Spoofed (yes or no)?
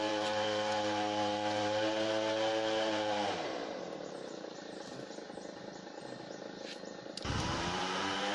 yes